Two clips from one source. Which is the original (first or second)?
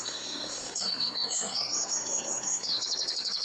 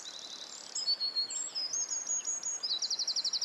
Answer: second